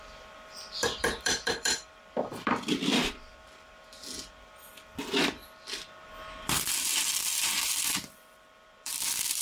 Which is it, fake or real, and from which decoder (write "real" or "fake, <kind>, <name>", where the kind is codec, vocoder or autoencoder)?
fake, vocoder, BigVGAN v2